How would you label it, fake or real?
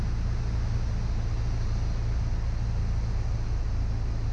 real